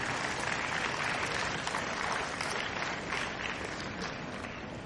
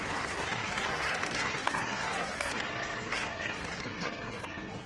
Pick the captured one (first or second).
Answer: first